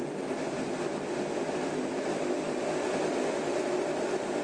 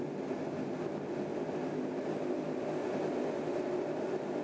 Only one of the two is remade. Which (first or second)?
first